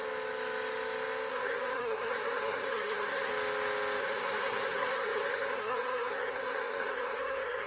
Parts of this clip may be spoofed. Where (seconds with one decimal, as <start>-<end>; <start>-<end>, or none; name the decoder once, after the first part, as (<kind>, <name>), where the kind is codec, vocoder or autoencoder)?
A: 1.3-3.3 (codec, SNAC); 4.0-7.7